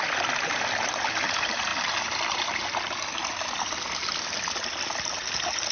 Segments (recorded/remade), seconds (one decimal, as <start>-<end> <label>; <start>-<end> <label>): 0.0-5.7 recorded